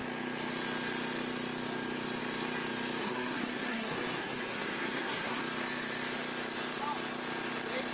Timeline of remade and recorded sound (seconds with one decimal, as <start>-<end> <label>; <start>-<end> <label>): 0.0-3.0 recorded; 3.0-5.4 remade; 5.4-7.9 recorded